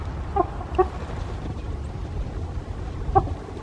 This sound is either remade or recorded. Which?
remade